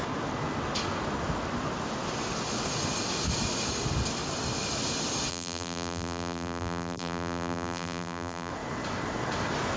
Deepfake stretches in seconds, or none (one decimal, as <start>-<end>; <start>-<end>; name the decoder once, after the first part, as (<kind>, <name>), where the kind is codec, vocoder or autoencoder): 5.3-8.5 (vocoder, BigVGAN v2)